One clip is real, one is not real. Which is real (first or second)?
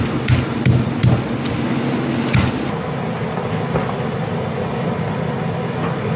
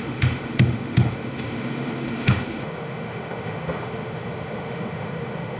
first